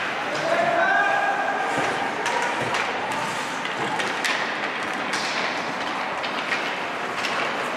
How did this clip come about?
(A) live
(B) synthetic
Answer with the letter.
A